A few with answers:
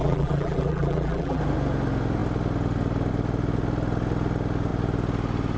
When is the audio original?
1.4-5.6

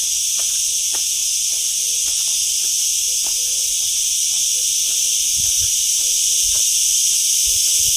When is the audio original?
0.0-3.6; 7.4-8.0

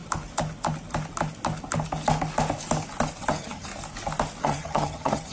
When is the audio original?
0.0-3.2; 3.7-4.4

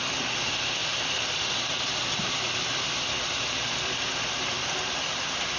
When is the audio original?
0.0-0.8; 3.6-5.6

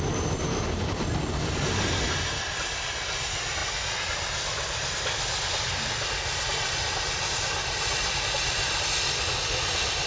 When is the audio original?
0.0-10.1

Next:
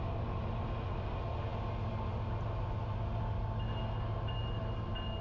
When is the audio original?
0.0-5.2

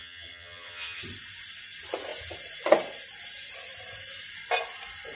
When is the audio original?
1.0-5.2

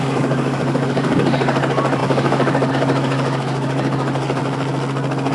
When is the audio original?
4.4-5.3